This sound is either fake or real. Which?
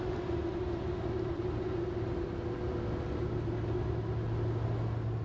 real